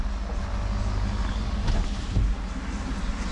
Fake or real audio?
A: real